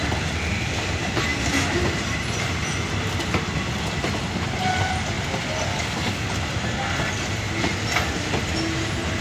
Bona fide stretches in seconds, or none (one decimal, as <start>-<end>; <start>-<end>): 0.0-5.7; 6.3-9.2